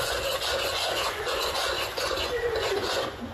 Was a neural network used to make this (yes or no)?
yes